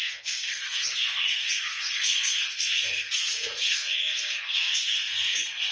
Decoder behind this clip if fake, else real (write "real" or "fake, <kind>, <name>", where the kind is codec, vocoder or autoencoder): fake, codec, SNAC